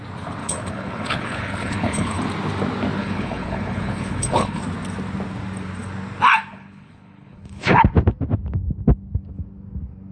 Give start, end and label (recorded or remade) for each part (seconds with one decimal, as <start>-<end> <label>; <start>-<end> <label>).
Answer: 0.0-0.4 recorded; 0.4-2.2 remade; 2.2-3.0 recorded; 3.0-4.6 remade; 4.6-6.5 recorded; 6.5-7.8 remade; 7.8-10.1 recorded